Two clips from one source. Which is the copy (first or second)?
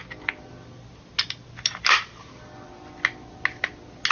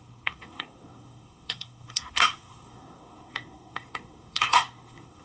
second